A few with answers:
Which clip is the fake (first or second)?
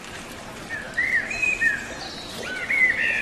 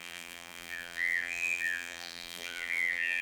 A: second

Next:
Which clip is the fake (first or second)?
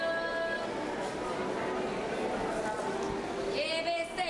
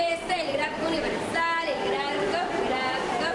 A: second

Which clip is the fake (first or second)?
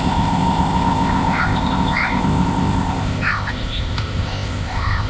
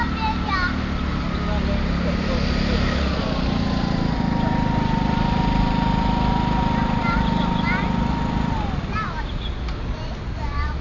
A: first